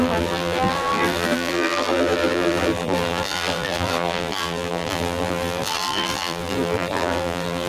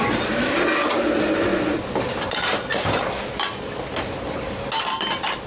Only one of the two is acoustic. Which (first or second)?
second